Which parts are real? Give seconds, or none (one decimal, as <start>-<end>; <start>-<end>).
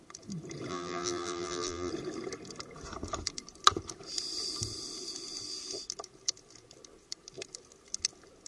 0.0-0.7; 1.9-8.5